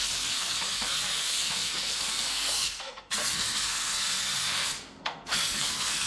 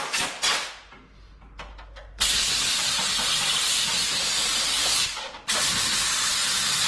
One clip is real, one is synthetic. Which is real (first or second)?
second